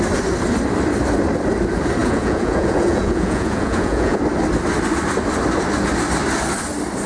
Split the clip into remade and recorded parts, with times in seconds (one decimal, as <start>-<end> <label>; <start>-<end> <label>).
0.0-2.0 recorded; 2.0-4.2 remade; 4.2-7.1 recorded